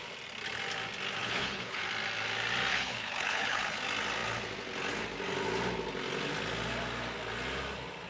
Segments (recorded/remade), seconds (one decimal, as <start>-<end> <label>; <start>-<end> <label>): 0.0-1.2 recorded; 1.2-1.8 remade; 1.8-2.7 recorded; 2.7-3.8 remade; 3.8-8.1 recorded